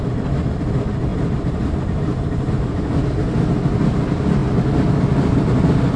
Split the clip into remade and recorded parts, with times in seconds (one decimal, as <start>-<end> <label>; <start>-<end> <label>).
0.0-6.0 recorded